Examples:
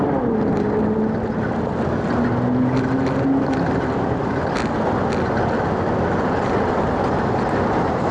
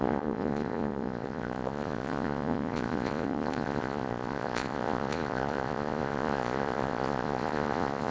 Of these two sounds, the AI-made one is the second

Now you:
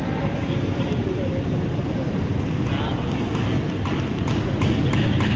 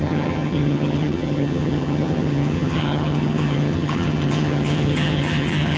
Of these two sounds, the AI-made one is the second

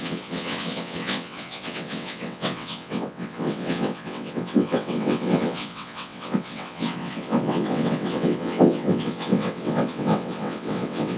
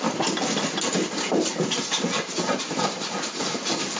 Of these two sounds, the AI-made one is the first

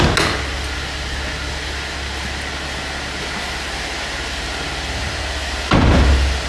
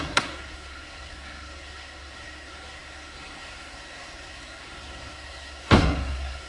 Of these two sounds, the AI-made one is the second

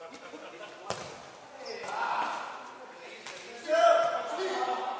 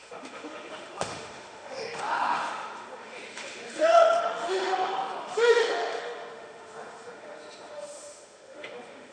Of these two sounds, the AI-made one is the second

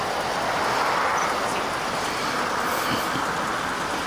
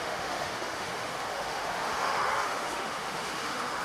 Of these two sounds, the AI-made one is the second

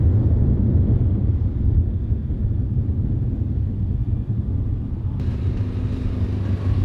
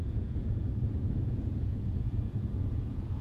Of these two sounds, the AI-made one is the second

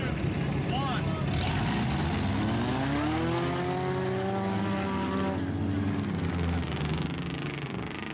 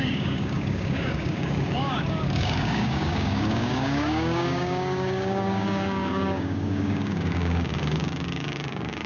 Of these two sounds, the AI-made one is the second